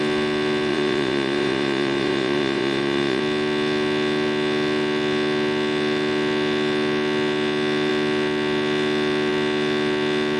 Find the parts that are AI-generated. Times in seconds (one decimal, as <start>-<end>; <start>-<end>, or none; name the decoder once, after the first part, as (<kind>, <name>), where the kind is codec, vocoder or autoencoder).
0.7-3.2 (vocoder, Vocos)